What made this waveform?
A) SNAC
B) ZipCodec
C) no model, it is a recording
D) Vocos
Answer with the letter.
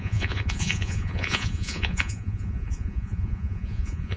D